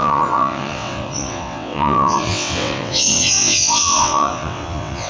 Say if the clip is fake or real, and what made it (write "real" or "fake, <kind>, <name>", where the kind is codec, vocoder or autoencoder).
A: fake, vocoder, WaveNeXt